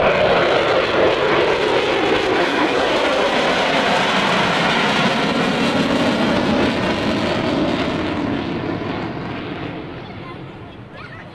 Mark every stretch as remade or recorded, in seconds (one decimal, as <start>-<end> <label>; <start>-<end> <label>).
0.0-2.4 recorded; 2.4-2.9 remade; 2.9-11.3 recorded